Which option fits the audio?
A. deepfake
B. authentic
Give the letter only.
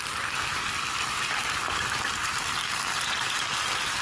A